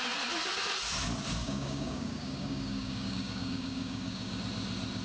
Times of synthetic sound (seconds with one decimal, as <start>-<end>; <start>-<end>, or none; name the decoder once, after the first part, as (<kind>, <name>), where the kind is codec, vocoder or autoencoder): 1.4-4.4 (codec, DAC)